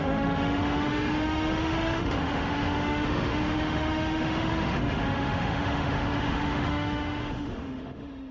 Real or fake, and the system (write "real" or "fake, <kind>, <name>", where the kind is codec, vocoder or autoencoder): fake, autoencoder, DAC-VAE